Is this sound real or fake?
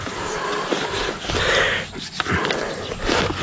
real